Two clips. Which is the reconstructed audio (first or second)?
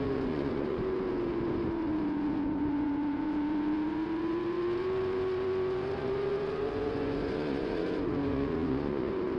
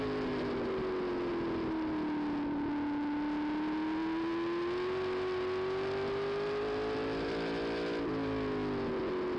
first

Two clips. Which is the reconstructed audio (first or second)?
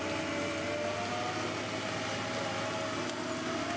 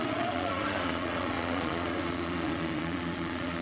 second